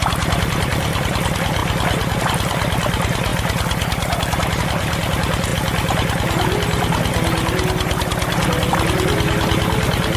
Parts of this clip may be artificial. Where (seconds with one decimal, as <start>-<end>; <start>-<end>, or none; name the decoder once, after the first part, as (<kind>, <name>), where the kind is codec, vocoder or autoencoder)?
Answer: 0.0-1.6 (vocoder, BigVGAN v2); 2.2-3.3; 4.6-5.5; 8.7-10.2